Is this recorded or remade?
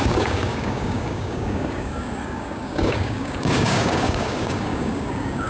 remade